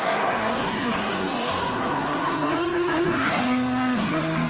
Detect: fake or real fake